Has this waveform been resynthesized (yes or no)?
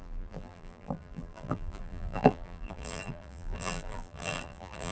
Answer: yes